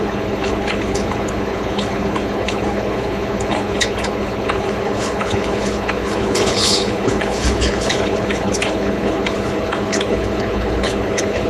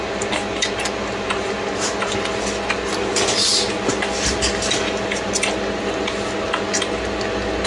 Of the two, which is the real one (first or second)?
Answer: second